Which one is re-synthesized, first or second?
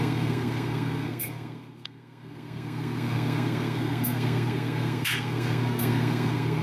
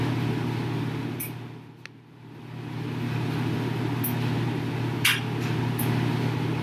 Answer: first